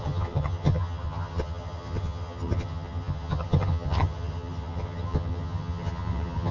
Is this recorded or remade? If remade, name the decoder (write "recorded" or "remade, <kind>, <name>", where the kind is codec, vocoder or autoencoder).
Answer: remade, vocoder, HiFi-GAN